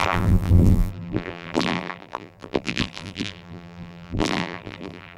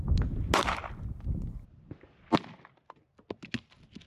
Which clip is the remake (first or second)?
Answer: first